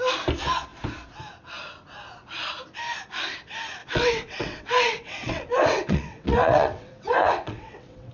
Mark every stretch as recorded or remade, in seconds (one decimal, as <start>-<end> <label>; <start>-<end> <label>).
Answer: 0.0-3.8 recorded; 3.8-8.1 remade